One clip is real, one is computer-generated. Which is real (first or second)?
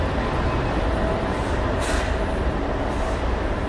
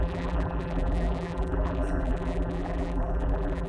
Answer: first